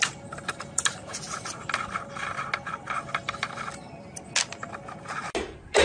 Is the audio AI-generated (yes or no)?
no